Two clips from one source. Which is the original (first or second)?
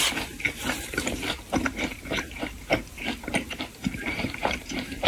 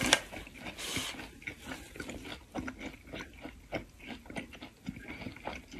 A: second